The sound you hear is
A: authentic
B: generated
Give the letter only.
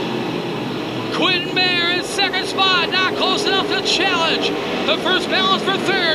A